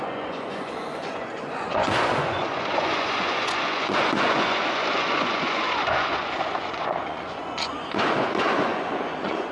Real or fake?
fake